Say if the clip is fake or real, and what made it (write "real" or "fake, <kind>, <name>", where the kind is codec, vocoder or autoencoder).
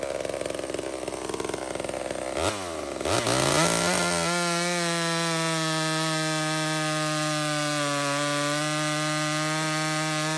real